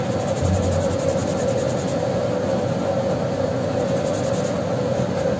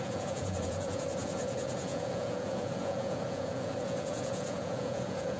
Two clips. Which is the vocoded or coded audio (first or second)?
second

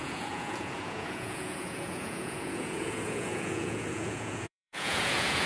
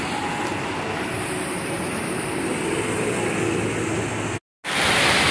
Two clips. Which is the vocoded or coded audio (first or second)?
first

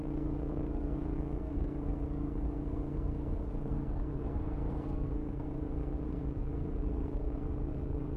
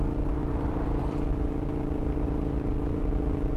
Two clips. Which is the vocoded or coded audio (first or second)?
first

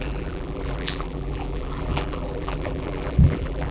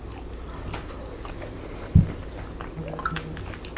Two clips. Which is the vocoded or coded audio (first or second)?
first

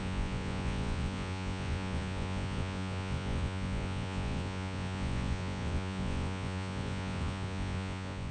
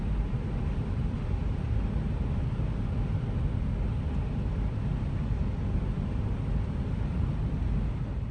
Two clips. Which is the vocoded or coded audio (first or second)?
first